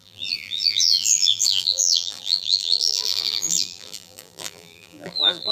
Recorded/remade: remade